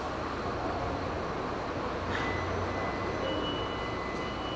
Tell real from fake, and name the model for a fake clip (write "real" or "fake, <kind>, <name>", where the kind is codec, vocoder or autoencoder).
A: real